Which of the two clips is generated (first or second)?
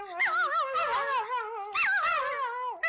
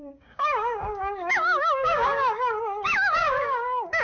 second